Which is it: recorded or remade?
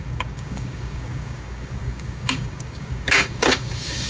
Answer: remade